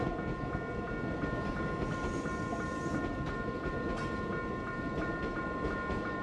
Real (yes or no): yes